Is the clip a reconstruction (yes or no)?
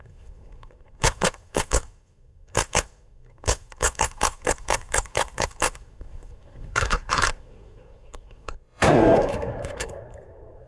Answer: yes